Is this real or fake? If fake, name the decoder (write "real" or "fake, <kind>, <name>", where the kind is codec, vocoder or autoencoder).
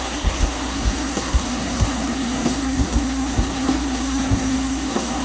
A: fake, codec, SNAC